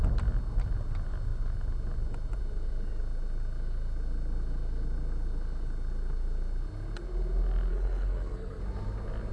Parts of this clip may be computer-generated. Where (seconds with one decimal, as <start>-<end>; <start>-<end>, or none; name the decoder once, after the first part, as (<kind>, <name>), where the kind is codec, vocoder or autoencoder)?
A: 7.7-8.6 (codec, SNAC)